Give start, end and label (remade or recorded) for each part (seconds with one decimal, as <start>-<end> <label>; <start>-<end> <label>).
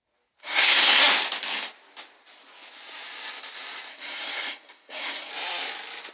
0.0-0.4 recorded; 0.4-1.0 remade; 1.0-3.9 recorded; 3.9-5.3 remade; 5.3-6.1 recorded